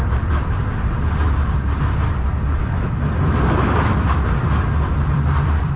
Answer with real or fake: fake